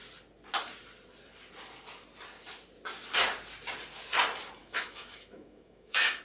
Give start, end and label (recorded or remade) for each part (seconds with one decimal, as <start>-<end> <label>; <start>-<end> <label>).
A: 0.0-4.6 recorded; 4.6-6.2 remade